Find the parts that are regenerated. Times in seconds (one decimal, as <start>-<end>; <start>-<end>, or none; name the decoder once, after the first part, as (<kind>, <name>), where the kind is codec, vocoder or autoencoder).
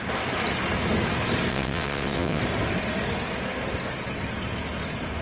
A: 1.5-2.4 (vocoder, WaveNeXt)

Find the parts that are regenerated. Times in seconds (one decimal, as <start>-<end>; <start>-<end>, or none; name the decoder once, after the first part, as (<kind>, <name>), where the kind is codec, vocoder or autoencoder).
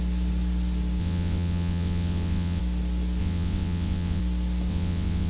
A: 1.0-2.6 (vocoder, WaveNeXt); 3.2-4.2; 4.7-5.3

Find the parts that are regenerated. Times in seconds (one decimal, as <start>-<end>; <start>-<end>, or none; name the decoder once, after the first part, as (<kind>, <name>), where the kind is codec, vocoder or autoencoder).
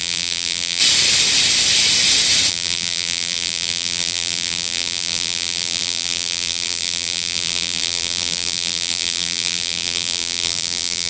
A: 0.0-0.8 (vocoder, BigVGAN v2); 2.5-11.1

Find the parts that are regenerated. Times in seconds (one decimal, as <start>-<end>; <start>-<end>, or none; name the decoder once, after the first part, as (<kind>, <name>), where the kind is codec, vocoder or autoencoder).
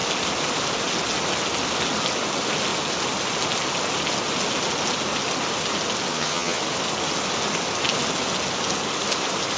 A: 6.1-6.6 (vocoder, HiFi-GAN)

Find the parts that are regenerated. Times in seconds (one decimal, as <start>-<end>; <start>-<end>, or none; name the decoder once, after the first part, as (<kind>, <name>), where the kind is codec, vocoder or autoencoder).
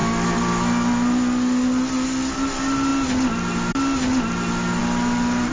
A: none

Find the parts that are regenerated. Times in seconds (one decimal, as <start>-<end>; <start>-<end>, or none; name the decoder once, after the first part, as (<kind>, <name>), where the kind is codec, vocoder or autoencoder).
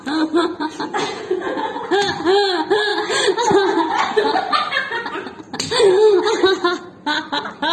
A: 0.4-1.9 (vocoder, Vocos)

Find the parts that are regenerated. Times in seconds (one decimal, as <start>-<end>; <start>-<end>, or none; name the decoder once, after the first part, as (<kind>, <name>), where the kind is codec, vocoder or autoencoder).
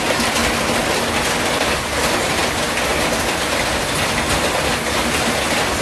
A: none